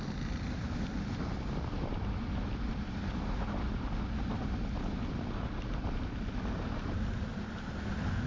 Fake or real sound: real